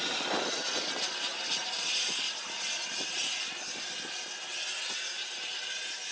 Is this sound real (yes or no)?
yes